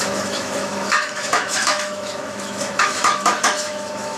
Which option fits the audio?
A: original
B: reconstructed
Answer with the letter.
B